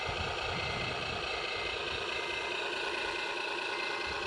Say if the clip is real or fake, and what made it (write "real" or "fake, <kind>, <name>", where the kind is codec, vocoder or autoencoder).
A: real